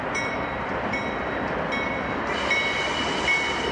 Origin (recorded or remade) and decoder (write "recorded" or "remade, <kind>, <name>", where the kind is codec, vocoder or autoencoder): recorded